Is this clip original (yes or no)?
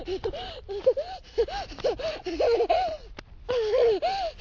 yes